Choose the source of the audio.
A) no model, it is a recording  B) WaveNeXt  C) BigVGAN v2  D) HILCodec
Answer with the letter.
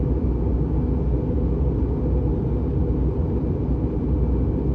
A